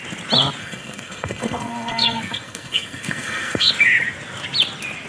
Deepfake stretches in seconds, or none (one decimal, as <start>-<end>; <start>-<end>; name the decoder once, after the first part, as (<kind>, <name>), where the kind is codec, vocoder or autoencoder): 0.6-3.7 (codec, SNAC)